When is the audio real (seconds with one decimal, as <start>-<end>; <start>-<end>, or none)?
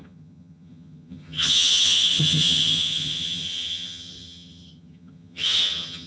none